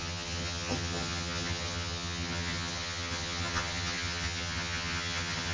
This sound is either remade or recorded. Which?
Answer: remade